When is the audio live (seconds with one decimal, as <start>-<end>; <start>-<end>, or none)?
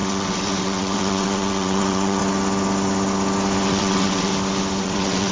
2.2-3.7; 4.3-4.8